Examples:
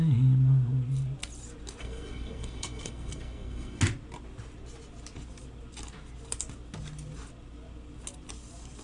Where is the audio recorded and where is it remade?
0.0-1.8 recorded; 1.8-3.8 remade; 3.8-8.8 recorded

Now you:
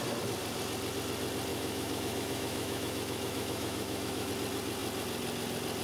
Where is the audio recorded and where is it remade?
0.0-1.5 recorded; 1.5-4.3 remade; 4.3-5.8 recorded

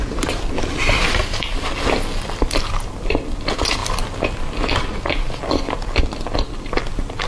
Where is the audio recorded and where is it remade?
0.0-7.3 recorded

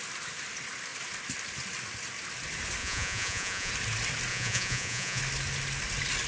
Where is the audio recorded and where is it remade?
0.0-2.8 recorded; 2.8-3.7 remade; 3.7-4.3 recorded; 4.3-5.2 remade; 5.2-6.3 recorded